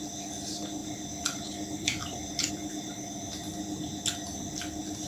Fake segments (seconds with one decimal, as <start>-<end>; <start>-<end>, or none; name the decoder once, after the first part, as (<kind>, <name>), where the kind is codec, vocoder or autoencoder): 0.8-2.5 (vocoder, BigVGAN v2)